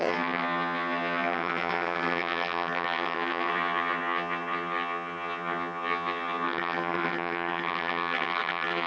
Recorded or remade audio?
remade